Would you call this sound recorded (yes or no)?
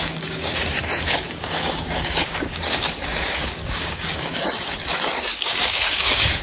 no